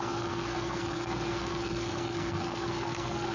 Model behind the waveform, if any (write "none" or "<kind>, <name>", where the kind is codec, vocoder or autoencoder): codec, SNAC